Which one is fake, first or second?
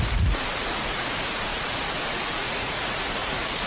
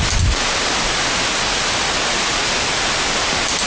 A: first